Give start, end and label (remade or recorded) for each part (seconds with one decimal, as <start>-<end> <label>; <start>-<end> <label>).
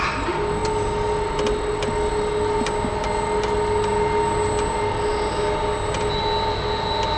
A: 0.0-7.2 recorded